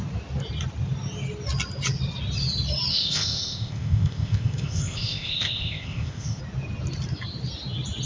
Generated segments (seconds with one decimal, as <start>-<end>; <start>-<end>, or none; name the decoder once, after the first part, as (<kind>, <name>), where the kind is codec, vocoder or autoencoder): 2.9-6.4 (codec, ZipCodec)